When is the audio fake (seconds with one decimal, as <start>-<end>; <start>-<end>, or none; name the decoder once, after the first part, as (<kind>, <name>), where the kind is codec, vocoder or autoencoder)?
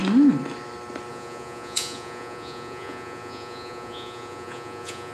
1.1-5.1 (vocoder, Vocos)